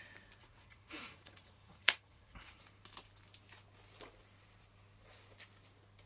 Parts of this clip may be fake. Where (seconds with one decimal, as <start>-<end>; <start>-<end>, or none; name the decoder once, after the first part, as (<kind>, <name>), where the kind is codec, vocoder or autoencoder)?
0.4-2.6 (vocoder, Vocos)